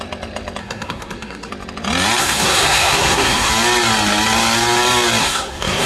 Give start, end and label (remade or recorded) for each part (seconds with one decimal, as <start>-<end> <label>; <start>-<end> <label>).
0.0-0.6 recorded; 0.6-1.5 remade; 1.5-2.2 recorded; 2.2-3.5 remade; 3.5-5.2 recorded; 5.2-5.9 remade

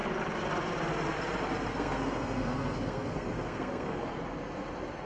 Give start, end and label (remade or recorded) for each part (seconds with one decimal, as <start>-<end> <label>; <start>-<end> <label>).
0.0-1.7 recorded; 1.7-4.0 remade; 4.0-5.1 recorded